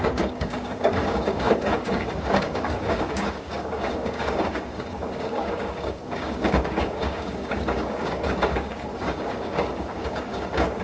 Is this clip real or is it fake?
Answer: fake